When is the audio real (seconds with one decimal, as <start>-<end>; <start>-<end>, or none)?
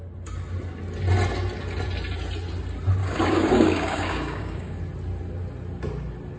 0.0-3.0; 4.8-6.4